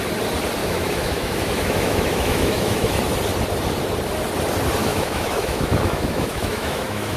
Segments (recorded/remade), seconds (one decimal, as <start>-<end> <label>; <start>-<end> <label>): 0.0-0.6 recorded; 0.6-3.0 remade; 3.0-4.8 recorded; 4.8-7.2 remade